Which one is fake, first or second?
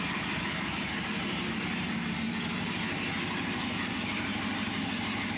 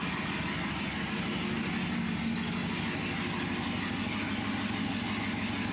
first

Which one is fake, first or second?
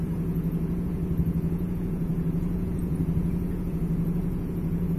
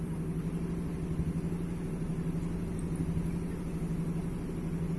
first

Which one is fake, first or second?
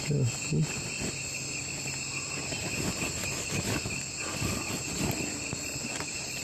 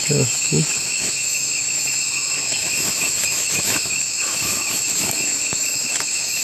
second